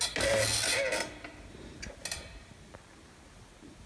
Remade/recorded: recorded